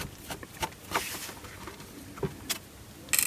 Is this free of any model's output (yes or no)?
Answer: yes